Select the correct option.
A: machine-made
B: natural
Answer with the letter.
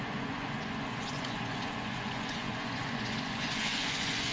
A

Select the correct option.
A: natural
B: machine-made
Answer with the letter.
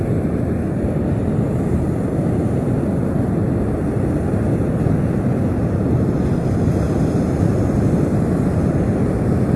A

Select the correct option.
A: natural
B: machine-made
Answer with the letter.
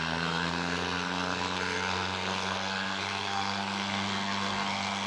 B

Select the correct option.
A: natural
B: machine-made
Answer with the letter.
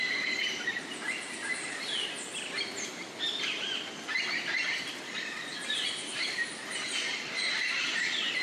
B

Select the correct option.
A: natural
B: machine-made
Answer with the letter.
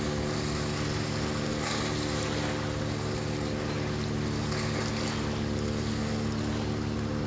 A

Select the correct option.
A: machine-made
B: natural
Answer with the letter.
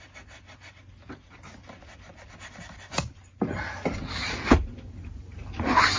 B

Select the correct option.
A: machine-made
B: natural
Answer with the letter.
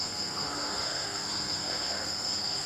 A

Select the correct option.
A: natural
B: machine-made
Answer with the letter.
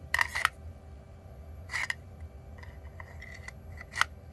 A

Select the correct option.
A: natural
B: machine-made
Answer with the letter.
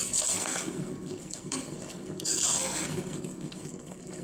B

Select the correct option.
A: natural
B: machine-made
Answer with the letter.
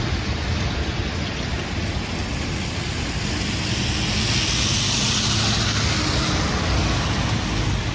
A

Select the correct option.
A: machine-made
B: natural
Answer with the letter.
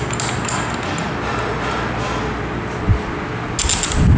B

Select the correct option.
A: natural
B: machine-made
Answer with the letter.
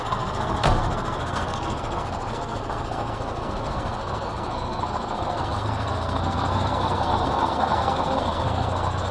B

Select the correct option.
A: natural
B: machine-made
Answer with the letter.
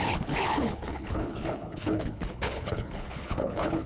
B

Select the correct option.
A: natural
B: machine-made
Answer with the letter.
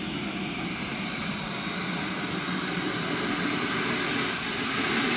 A